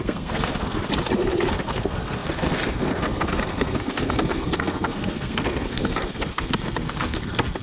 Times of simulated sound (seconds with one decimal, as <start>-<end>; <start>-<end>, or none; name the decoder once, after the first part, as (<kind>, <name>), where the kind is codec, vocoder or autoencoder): 0.0-0.8 (codec, SNAC); 1.5-7.6

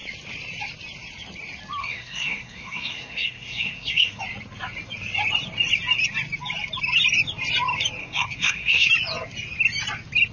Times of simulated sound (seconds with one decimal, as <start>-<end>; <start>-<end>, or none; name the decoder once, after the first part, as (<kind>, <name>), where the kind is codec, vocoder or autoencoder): 1.8-4.2 (codec, SNAC); 8.0-8.9

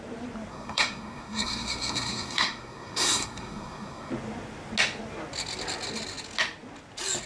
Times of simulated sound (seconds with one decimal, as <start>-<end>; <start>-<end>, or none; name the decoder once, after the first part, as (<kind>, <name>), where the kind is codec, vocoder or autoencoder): 0.5-4.1 (codec, SNAC)

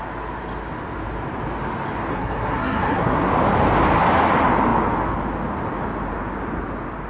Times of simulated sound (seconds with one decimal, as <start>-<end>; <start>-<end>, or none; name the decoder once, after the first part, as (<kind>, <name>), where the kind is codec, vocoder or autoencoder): 2.1-3.3 (codec, SNAC)